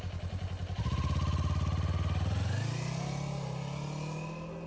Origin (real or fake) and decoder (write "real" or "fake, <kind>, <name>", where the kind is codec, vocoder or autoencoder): real